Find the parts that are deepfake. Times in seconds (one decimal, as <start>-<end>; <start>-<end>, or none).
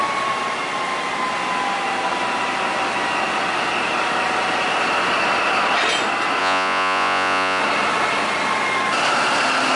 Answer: 6.4-7.6